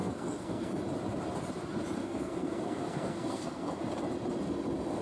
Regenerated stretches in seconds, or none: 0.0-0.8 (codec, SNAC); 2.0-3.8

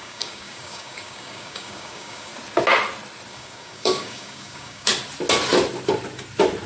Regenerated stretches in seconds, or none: 0.0-2.3 (codec, DAC); 3.3-4.9

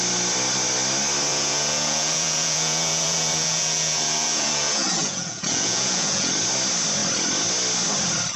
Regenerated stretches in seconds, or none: 1.3-6.3 (vocoder, Vocos)

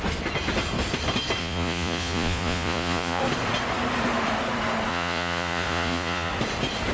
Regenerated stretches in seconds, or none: 1.4-3.2 (vocoder, Vocos); 4.9-6.3

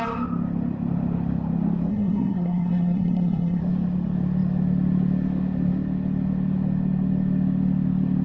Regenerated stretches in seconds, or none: 1.9-3.6 (codec, SNAC)

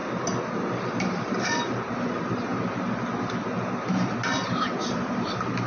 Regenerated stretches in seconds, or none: 0.8-2.5 (vocoder, BigVGAN v2); 4.3-5.7